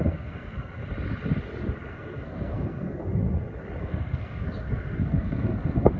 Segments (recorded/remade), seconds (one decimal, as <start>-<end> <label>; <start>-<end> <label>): 0.0-0.8 remade; 0.8-1.9 recorded; 1.9-3.0 remade; 3.0-3.8 recorded; 3.8-6.0 remade